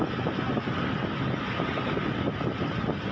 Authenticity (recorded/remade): recorded